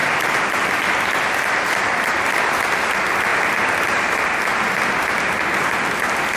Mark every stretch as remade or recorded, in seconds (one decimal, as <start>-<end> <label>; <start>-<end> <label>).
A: 0.0-2.3 remade; 2.3-6.4 recorded